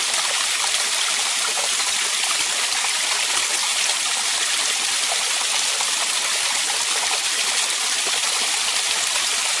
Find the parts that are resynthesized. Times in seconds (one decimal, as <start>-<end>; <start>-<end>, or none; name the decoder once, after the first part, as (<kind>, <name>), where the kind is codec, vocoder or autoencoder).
0.0-3.7 (vocoder, BigVGAN v2); 4.5-9.6